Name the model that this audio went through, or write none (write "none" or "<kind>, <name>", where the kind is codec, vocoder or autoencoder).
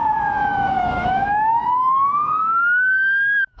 autoencoder, DAC-VAE